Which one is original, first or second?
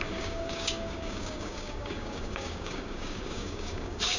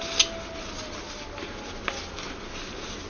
second